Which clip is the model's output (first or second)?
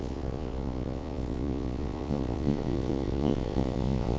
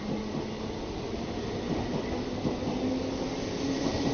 first